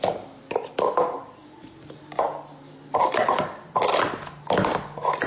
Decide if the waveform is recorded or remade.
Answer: recorded